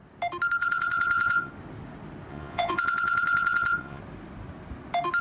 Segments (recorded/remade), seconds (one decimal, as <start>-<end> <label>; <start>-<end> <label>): 0.0-0.6 recorded; 0.6-1.5 remade; 1.5-2.3 recorded; 2.3-4.0 remade; 4.0-5.2 recorded